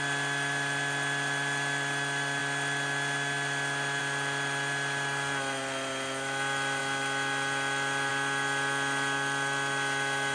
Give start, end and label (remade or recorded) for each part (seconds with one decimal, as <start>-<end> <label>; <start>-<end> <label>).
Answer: 0.0-10.3 recorded